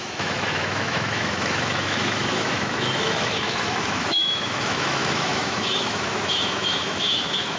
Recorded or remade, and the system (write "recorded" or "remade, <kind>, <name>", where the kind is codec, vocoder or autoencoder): remade, autoencoder, DAC-VAE